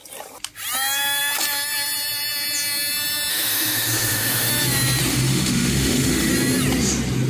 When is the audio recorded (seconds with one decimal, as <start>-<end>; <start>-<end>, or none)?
0.0-3.3; 4.5-5.1; 6.3-7.3